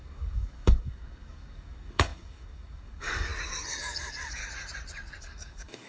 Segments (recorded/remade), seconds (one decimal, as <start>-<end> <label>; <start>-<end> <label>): 0.0-3.3 remade; 3.3-3.8 recorded; 3.8-4.4 remade; 4.4-5.2 recorded; 5.2-5.9 remade